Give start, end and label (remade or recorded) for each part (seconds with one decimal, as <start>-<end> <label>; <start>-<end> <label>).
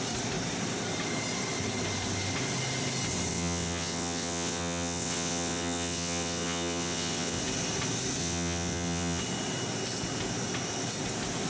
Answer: 0.0-3.3 recorded; 3.3-7.4 remade; 7.4-8.2 recorded; 8.2-9.2 remade; 9.2-11.5 recorded